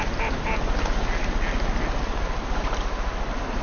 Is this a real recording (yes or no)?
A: yes